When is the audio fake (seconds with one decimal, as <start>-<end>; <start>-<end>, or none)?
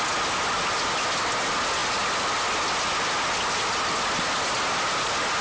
none